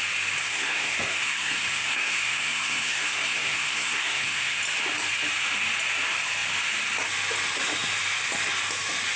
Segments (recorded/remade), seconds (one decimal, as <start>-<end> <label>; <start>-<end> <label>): 0.0-0.4 recorded; 0.4-4.6 remade; 4.6-9.2 recorded